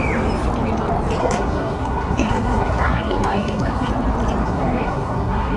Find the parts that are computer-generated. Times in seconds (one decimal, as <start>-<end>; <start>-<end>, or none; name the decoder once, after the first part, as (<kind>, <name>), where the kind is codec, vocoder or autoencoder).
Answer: 1.2-3.9 (codec, SNAC); 4.4-5.6

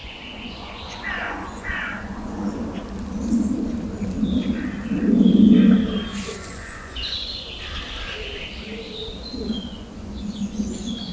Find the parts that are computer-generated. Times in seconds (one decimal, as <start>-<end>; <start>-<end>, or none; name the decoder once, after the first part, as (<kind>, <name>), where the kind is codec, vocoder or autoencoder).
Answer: 0.0-2.6 (vocoder, Vocos); 6.1-7.5; 9.0-11.1